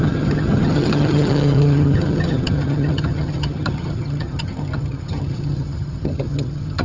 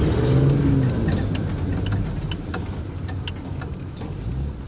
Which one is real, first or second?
second